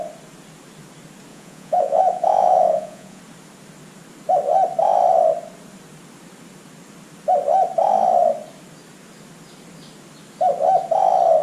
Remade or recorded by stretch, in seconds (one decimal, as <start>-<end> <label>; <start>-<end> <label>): 0.0-1.3 recorded; 1.3-3.2 remade; 3.2-11.4 recorded